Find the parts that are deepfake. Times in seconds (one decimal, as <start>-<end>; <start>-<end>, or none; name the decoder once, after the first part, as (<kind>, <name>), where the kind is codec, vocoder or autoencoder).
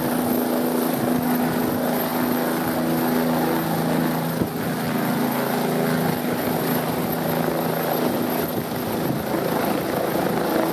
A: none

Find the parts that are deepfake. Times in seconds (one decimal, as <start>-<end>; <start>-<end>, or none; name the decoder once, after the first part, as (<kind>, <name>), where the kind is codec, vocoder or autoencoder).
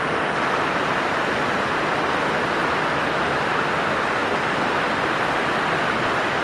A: none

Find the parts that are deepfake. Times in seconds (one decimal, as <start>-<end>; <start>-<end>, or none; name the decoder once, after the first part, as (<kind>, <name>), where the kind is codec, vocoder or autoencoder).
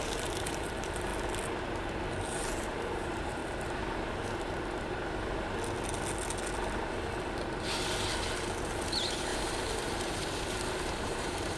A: 0.0-1.1 (vocoder, BigVGAN v2); 2.4-3.4; 8.6-11.6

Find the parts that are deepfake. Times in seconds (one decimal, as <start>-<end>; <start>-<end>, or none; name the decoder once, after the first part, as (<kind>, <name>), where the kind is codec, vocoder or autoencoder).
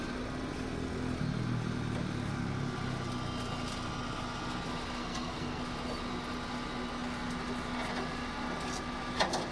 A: 5.0-5.6 (codec, SNAC)